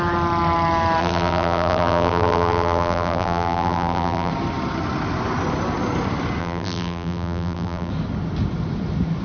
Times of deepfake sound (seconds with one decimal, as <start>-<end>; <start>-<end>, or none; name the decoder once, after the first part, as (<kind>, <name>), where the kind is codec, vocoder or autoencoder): 1.0-4.3 (vocoder, BigVGAN v2); 6.4-7.9